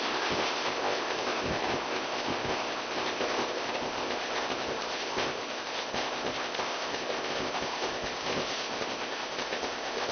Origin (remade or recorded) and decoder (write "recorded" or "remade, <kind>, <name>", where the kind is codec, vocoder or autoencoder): remade, codec, ZipCodec